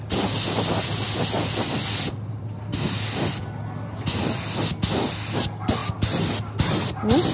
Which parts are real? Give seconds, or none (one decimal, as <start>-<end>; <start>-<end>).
0.0-7.3